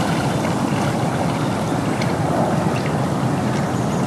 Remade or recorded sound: recorded